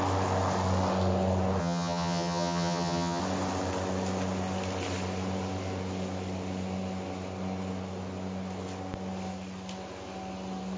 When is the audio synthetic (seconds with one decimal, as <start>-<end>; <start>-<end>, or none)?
1.6-3.2